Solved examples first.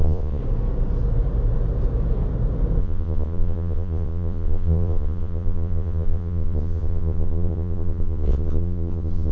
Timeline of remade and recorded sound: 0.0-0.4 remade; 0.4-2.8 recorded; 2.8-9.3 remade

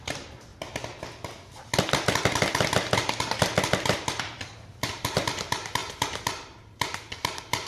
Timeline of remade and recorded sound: 0.0-0.5 remade; 0.5-4.2 recorded; 4.2-7.7 remade

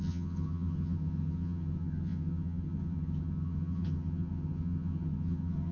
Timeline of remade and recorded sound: 0.0-5.7 remade

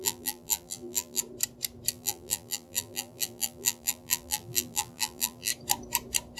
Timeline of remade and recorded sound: 0.0-1.2 remade; 1.2-1.9 recorded; 1.9-5.5 remade; 5.5-6.4 recorded

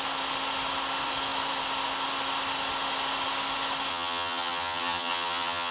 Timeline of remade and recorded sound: 0.0-3.9 recorded; 3.9-5.7 remade

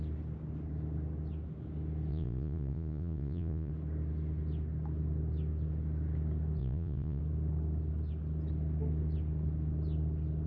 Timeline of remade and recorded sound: 0.0-2.1 recorded; 2.1-3.7 remade; 3.7-6.6 recorded; 6.6-7.2 remade; 7.2-10.5 recorded